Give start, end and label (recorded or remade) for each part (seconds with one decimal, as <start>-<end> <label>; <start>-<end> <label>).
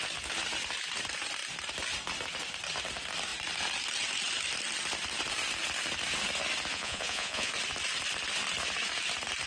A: 0.0-6.7 recorded; 6.7-7.5 remade; 7.5-9.5 recorded